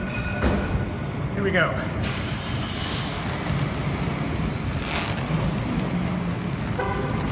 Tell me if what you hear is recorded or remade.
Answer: recorded